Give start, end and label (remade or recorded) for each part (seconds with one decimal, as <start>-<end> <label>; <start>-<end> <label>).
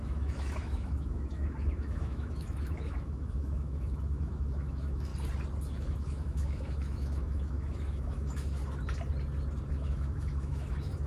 0.0-5.1 remade; 5.1-5.7 recorded; 5.7-8.6 remade; 8.6-9.7 recorded; 9.7-11.1 remade